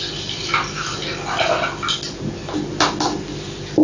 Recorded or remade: recorded